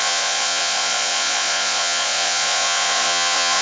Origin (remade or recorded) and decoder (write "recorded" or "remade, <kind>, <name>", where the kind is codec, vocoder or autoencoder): remade, vocoder, Vocos